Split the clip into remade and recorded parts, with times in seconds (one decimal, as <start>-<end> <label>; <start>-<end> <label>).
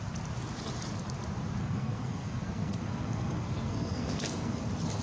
0.0-1.6 recorded; 1.6-4.6 remade; 4.6-5.0 recorded